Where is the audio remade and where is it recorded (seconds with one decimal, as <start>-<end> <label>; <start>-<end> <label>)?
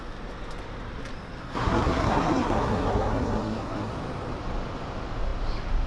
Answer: 0.0-1.4 recorded; 1.4-3.9 remade; 3.9-5.9 recorded